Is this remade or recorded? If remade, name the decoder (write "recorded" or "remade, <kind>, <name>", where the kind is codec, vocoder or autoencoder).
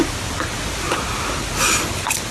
recorded